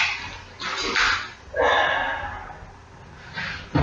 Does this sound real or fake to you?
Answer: real